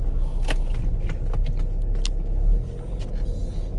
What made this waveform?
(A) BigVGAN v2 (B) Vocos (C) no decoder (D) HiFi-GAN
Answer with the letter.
C